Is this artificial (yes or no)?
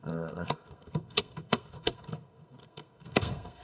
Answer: yes